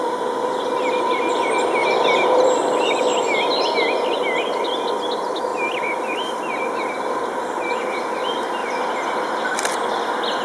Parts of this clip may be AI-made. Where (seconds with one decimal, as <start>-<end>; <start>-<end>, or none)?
1.8-3.7; 5.5-6.4; 8.6-9.9